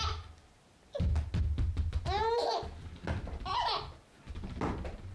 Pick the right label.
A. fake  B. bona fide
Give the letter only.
B